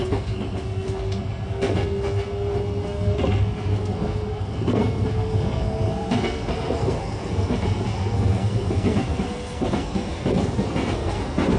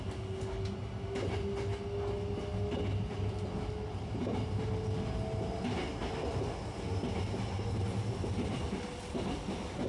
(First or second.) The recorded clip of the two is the second